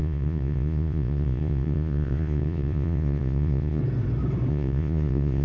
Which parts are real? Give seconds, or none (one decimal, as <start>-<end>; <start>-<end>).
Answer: 3.8-4.5